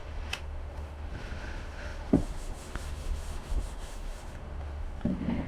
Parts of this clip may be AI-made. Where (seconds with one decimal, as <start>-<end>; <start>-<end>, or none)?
0.0-5.5